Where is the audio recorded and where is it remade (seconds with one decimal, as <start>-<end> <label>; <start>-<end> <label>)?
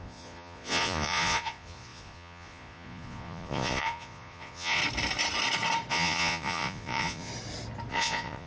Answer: 0.0-4.8 remade; 4.8-5.9 recorded; 5.9-7.3 remade; 7.3-7.9 recorded; 7.9-8.5 remade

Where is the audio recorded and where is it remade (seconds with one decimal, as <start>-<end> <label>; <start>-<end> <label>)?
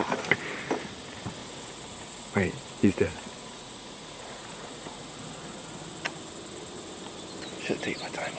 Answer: 0.0-1.4 recorded; 1.4-5.9 remade; 5.9-8.4 recorded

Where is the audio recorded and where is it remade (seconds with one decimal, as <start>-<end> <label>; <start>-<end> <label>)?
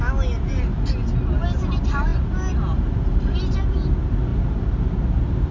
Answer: 0.0-5.5 recorded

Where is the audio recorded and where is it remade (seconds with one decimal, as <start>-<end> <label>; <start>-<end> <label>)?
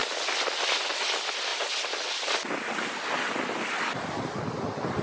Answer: 0.0-5.0 recorded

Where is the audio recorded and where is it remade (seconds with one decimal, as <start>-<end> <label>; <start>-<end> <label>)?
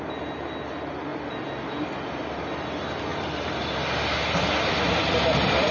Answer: 0.0-5.7 recorded